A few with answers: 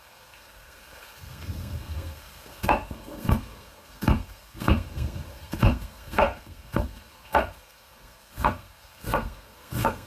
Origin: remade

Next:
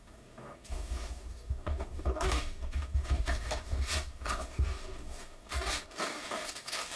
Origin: remade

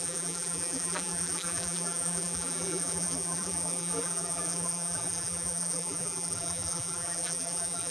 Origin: remade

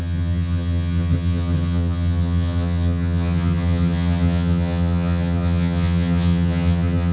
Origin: remade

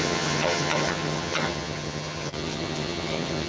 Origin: remade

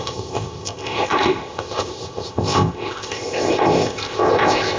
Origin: remade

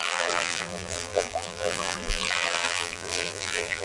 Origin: remade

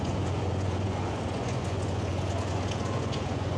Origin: remade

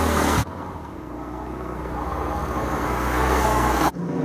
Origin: remade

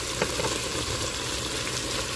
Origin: recorded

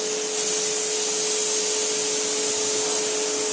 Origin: recorded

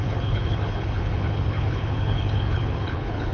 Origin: remade